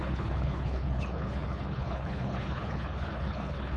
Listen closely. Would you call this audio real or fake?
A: fake